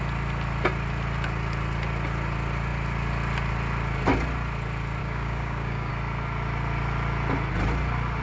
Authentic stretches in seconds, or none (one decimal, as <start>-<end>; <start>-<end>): 0.0-5.0; 5.9-8.2